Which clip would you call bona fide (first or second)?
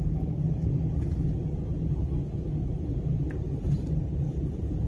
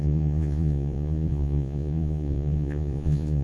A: first